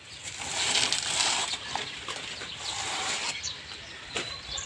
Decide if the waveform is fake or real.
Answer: fake